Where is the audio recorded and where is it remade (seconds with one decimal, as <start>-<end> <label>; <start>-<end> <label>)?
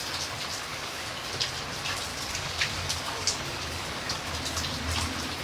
0.0-0.7 recorded; 0.7-1.3 remade; 1.3-2.1 recorded; 2.1-4.3 remade; 4.3-5.4 recorded